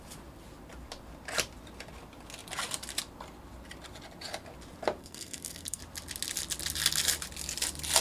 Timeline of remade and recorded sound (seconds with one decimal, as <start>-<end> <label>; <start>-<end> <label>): 0.0-5.0 recorded; 5.0-5.8 remade; 5.8-8.0 recorded